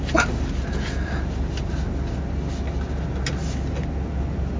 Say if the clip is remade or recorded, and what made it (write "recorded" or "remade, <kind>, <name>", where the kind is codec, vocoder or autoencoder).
recorded